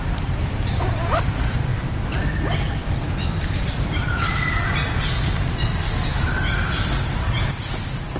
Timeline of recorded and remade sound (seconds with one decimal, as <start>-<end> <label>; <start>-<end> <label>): 0.0-6.1 recorded; 6.1-6.9 remade; 6.9-8.2 recorded